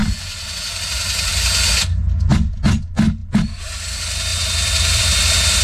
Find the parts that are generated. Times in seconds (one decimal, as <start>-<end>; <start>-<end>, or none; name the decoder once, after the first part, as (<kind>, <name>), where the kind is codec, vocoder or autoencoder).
4.3-5.0 (vocoder, BigVGAN v2)